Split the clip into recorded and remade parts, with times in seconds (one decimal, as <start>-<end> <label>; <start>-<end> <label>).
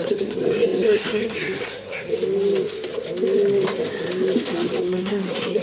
0.0-2.1 remade; 2.1-4.8 recorded; 4.8-5.6 remade